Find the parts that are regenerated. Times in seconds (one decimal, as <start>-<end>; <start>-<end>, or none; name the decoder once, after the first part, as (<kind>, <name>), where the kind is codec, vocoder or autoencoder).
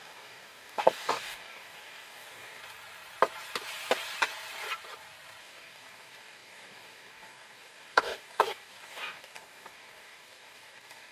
0.0-2.6 (codec, DAC); 5.4-11.1